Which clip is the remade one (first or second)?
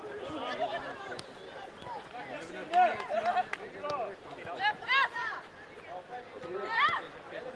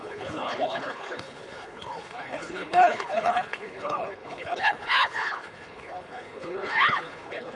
second